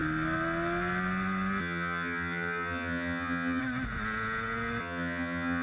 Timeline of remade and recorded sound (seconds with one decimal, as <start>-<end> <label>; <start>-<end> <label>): 0.0-1.6 recorded; 1.6-3.6 remade; 3.6-4.8 recorded; 4.8-5.6 remade